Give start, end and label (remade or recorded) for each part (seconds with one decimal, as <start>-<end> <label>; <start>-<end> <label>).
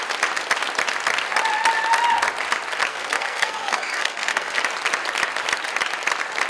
0.0-2.9 recorded; 2.9-4.6 remade; 4.6-6.5 recorded